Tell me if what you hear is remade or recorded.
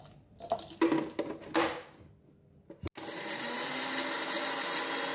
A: recorded